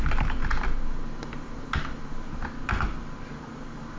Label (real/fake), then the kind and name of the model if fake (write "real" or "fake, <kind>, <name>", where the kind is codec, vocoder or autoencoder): real